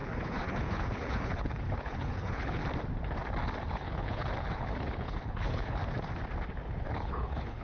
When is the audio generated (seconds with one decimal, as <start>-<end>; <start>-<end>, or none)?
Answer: 0.0-2.6; 3.7-5.8; 6.8-7.6